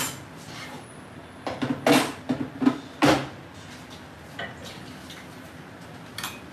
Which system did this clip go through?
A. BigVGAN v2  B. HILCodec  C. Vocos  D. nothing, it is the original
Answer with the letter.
D